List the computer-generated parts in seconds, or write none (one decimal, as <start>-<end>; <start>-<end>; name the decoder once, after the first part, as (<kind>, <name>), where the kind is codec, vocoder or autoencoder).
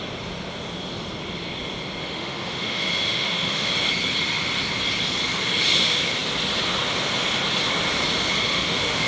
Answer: 2.0-3.7 (autoencoder, DAC-VAE); 8.5-9.1